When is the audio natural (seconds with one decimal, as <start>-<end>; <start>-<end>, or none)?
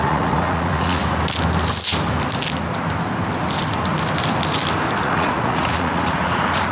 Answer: 1.0-5.0